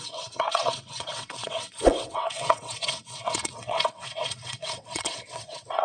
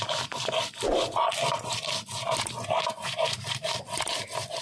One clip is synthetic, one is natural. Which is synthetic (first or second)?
first